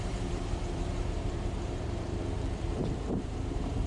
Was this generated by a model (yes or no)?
yes